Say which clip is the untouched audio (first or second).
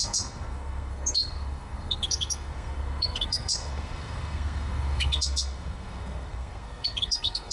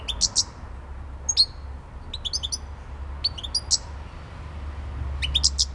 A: second